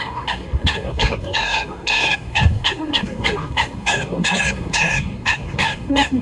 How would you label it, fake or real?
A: fake